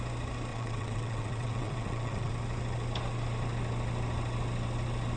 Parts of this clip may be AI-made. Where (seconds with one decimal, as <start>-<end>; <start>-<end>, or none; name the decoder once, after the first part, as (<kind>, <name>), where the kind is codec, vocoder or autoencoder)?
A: 0.5-2.3 (vocoder, WaveNeXt)